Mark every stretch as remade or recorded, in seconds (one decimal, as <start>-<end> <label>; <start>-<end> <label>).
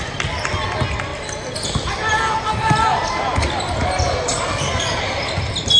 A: 0.0-5.8 recorded